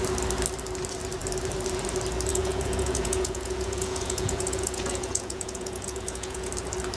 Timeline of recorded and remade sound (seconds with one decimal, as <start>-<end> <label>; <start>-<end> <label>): 0.0-2.3 recorded; 2.3-6.5 remade; 6.5-7.0 recorded

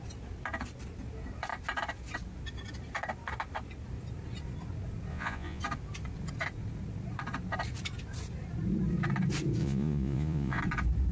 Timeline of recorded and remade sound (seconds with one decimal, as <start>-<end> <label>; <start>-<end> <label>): 0.0-5.1 recorded; 5.1-5.6 remade; 5.6-9.6 recorded; 9.6-10.6 remade; 10.6-11.1 recorded

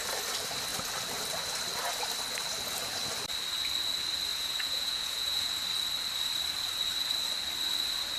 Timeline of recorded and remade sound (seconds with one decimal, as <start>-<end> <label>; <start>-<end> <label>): 0.0-4.3 recorded; 4.3-5.5 remade; 5.5-8.2 recorded

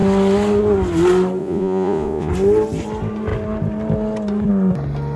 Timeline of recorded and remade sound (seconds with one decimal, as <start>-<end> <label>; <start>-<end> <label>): 0.0-1.4 recorded; 1.4-2.3 remade; 2.3-5.2 recorded

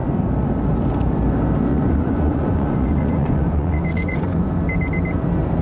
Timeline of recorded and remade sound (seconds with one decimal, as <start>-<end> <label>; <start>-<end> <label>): 0.0-1.7 recorded; 1.7-4.5 remade; 4.5-5.6 recorded

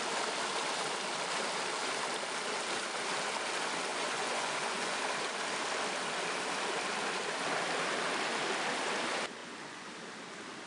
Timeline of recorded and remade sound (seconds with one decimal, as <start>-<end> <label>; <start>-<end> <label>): 0.0-3.9 recorded; 3.9-5.0 remade; 5.0-9.4 recorded; 9.4-9.9 remade; 9.9-10.7 recorded

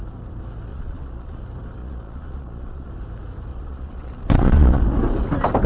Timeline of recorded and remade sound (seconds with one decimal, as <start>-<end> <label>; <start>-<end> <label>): 0.0-0.7 recorded; 0.7-1.4 remade; 1.4-1.8 recorded; 1.8-2.9 remade; 2.9-3.5 recorded; 3.5-4.8 remade; 4.8-5.7 recorded

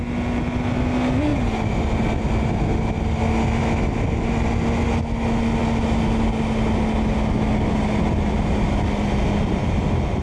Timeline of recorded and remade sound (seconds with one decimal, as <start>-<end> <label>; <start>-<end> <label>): 0.0-10.2 recorded